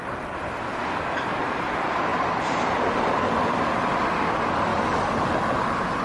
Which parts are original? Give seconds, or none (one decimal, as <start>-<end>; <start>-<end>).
0.0-6.0